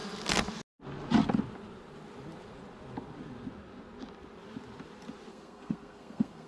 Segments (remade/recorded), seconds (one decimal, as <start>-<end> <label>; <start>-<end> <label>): 0.0-5.3 recorded; 5.3-6.5 remade

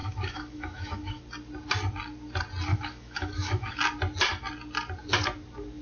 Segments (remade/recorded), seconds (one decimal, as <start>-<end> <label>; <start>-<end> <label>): 0.0-1.2 remade; 1.2-2.7 recorded; 2.7-3.8 remade; 3.8-5.8 recorded

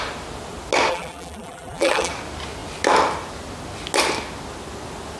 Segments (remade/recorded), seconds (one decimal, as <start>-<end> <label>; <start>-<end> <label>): 0.0-0.9 recorded; 0.9-2.1 remade; 2.1-5.2 recorded

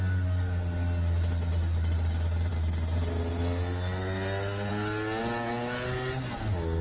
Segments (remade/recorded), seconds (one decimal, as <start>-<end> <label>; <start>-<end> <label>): 0.0-6.8 recorded

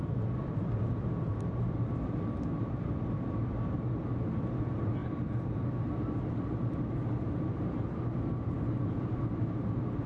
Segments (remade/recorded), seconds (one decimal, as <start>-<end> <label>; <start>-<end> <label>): 0.0-10.1 recorded

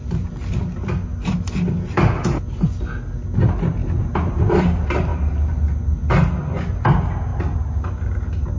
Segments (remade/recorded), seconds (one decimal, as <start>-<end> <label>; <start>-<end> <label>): 0.0-8.6 recorded

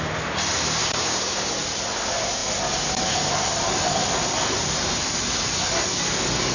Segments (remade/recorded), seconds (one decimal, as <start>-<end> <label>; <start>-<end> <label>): 0.0-0.8 recorded; 0.8-1.5 remade; 1.5-6.5 recorded

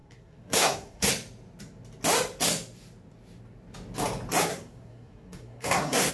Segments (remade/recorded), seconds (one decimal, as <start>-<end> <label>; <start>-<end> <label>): 0.0-1.1 remade; 1.1-4.5 recorded; 4.5-6.1 remade